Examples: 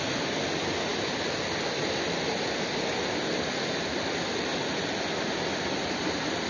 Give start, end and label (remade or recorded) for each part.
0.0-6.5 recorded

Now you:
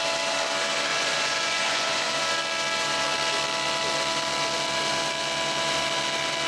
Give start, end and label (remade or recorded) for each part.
0.0-0.9 recorded; 0.9-2.1 remade; 2.1-6.5 recorded

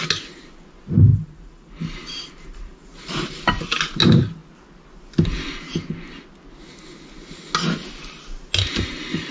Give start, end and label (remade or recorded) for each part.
0.0-1.1 recorded; 1.1-3.7 remade; 3.7-9.3 recorded

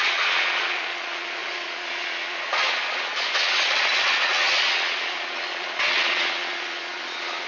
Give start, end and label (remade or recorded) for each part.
0.0-7.5 remade

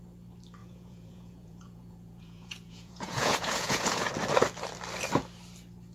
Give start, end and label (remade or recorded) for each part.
0.0-0.6 recorded; 0.6-4.1 remade; 4.1-5.9 recorded

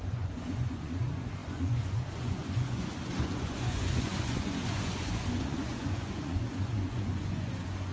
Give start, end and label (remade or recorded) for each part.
0.0-7.9 remade

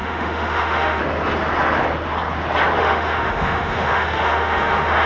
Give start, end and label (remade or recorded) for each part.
0.0-1.0 remade; 1.0-2.8 recorded; 2.8-5.1 remade

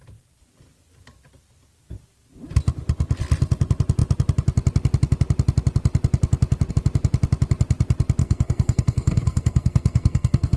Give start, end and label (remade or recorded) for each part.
0.0-8.2 recorded; 8.2-10.6 remade